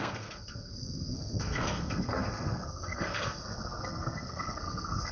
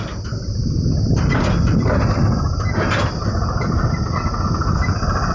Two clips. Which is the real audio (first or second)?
second